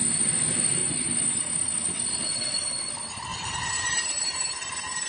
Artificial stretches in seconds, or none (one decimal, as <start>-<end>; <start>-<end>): 0.8-2.1; 3.3-4.5